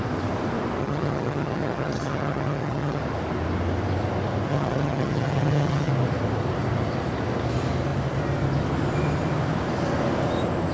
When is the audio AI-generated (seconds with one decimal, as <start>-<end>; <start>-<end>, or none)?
0.8-3.0; 4.5-5.9